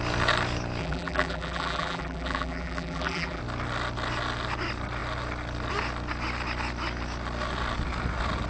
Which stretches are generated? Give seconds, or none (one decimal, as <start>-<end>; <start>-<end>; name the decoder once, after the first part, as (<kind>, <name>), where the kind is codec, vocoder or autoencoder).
0.8-3.4 (vocoder, BigVGAN v2)